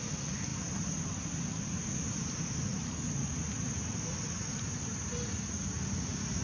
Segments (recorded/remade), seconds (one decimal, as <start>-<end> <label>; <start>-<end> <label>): 0.0-6.4 recorded